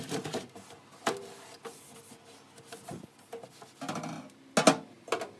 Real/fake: real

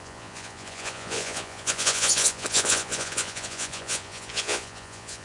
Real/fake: fake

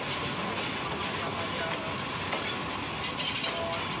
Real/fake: real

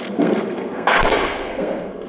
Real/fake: fake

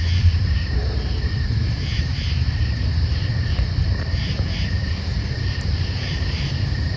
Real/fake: fake